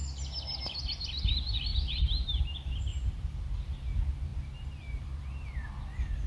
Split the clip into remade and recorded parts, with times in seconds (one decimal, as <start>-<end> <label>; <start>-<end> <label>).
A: 0.0-1.7 recorded; 1.7-2.4 remade; 2.4-2.9 recorded; 2.9-3.7 remade; 3.7-6.3 recorded